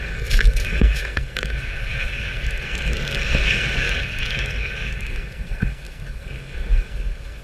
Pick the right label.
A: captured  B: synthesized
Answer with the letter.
B